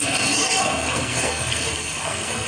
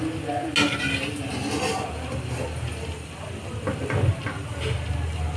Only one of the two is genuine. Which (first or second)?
second